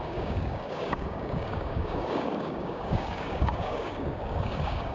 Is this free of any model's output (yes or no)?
no